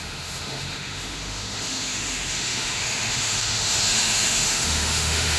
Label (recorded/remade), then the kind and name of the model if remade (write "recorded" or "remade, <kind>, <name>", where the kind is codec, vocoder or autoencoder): remade, autoencoder, DAC-VAE